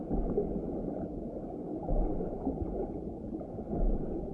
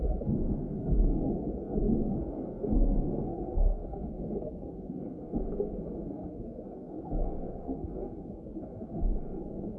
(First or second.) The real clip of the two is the first